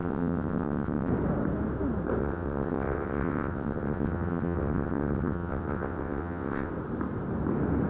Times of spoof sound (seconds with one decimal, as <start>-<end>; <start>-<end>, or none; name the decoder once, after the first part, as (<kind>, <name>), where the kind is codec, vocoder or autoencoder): 0.0-1.1 (vocoder, WaveNeXt); 2.2-6.7